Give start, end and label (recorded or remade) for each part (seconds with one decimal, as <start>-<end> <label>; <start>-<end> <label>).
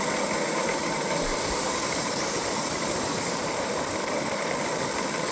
0.0-1.3 recorded; 1.3-4.5 remade; 4.5-5.3 recorded